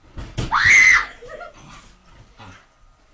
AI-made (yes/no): no